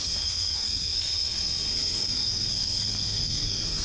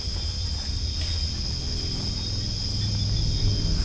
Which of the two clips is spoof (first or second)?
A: first